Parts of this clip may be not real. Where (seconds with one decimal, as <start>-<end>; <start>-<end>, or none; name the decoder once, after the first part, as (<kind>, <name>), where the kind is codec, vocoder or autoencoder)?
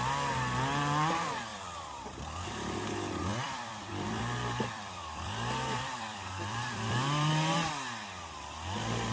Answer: 1.5-2.7 (vocoder, BigVGAN v2); 3.3-7.7